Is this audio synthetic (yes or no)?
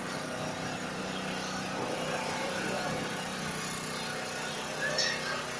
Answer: no